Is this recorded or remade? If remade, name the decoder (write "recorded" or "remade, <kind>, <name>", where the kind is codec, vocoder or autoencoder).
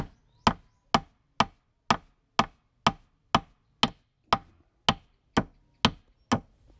recorded